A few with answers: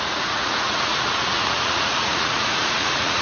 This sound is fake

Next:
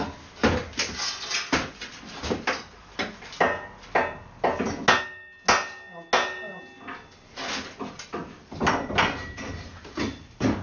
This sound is real